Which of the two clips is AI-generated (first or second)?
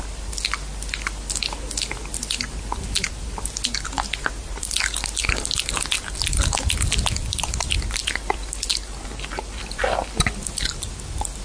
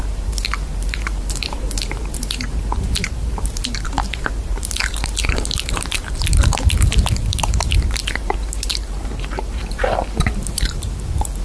second